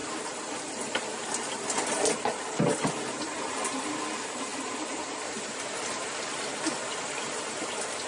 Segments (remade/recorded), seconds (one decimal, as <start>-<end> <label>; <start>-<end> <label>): 0.0-2.0 remade; 2.0-4.5 recorded; 4.5-6.2 remade; 6.2-8.1 recorded

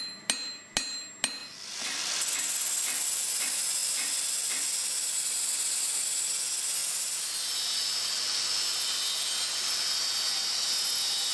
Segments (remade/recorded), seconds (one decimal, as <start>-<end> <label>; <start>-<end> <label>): 0.0-11.3 recorded

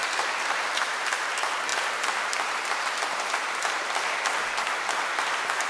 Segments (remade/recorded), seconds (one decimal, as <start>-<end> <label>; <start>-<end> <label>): 0.0-0.5 recorded; 0.5-5.7 remade

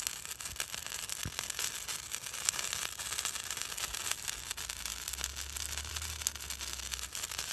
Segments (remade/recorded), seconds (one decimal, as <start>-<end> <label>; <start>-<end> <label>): 0.0-7.5 recorded

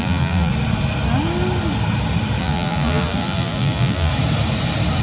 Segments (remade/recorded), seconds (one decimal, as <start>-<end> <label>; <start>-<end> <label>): 0.0-0.5 remade; 0.5-2.4 recorded; 2.4-4.1 remade; 4.1-5.0 recorded